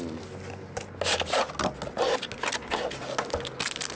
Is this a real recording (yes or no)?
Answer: yes